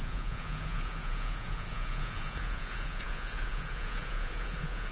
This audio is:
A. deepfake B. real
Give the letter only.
A